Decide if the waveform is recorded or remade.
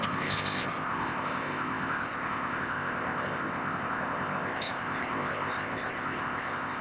remade